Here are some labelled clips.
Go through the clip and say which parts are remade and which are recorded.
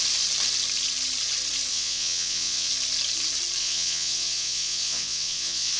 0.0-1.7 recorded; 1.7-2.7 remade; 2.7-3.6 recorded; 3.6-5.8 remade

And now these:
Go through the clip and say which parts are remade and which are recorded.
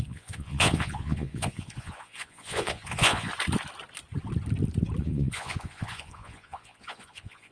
0.0-3.3 remade; 3.3-5.0 recorded; 5.0-7.5 remade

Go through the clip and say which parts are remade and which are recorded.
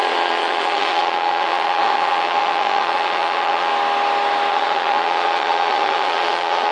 0.0-3.7 remade; 3.7-4.5 recorded; 4.5-6.7 remade